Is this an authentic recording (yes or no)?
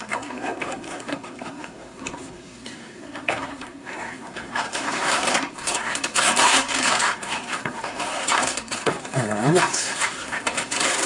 no